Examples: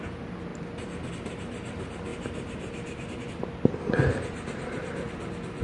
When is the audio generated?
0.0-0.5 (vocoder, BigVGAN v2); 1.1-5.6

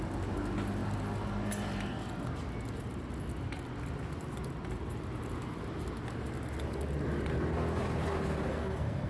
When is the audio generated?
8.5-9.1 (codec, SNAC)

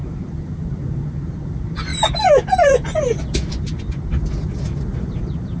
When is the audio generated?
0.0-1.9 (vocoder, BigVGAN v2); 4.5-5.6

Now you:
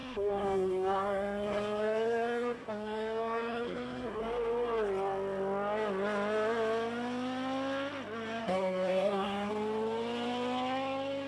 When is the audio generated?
0.0-4.2 (codec, SNAC); 8.4-9.5

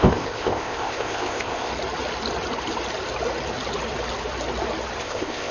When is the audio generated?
0.0-1.7 (codec, ZipCodec); 5.0-5.5